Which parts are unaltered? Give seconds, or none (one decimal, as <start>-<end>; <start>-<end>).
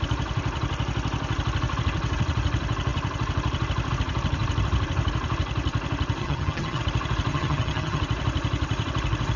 0.0-6.2; 6.8-7.3; 8.0-9.4